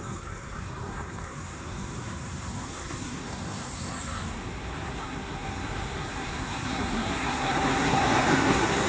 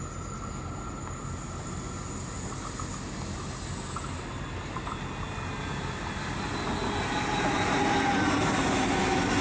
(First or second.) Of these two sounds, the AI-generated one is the first